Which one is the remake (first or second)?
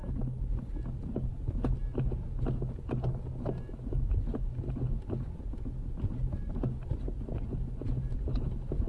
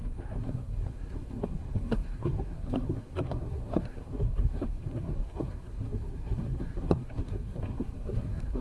second